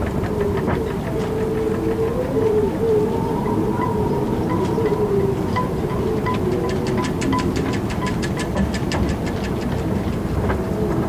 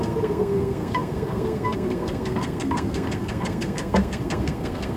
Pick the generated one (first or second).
second